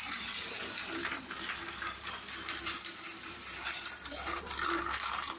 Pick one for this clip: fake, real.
fake